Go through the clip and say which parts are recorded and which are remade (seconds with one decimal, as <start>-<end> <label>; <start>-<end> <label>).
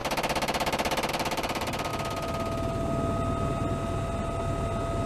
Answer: 0.0-1.1 recorded; 1.1-1.9 remade; 1.9-5.1 recorded